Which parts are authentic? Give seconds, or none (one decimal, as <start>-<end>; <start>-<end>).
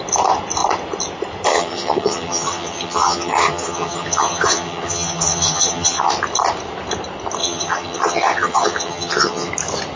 0.0-1.5; 6.1-7.4; 9.5-10.0